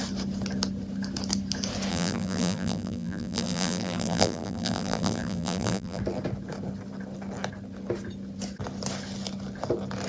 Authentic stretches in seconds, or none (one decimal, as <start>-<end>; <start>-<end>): 0.0-1.9; 6.0-10.1